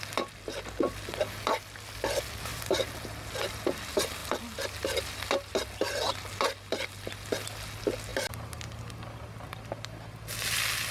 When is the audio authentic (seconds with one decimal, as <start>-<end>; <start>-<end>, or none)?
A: 0.0-10.9